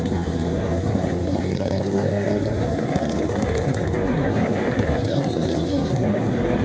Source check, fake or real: fake